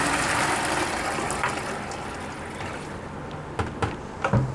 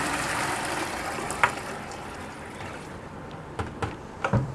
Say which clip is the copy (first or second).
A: second